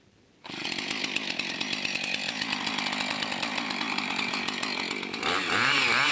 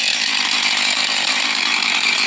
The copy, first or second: second